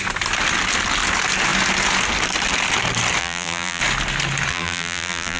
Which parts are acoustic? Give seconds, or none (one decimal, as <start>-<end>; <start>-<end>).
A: 0.0-3.2; 3.8-4.5